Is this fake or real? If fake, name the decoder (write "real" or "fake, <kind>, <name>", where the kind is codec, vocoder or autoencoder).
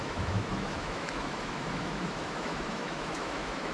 fake, autoencoder, DAC-VAE